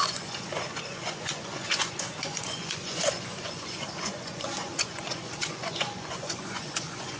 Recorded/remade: remade